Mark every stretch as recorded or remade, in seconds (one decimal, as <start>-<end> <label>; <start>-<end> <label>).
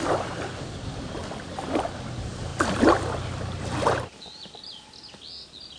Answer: 0.0-1.2 recorded; 1.2-2.0 remade; 2.0-2.5 recorded; 2.5-4.2 remade; 4.2-5.8 recorded